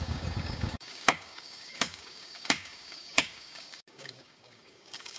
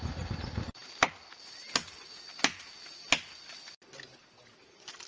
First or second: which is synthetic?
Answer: first